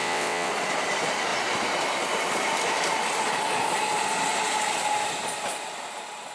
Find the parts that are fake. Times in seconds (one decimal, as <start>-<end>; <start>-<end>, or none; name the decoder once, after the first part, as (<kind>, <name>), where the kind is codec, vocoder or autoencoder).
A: 0.0-0.5 (vocoder, WaveNeXt)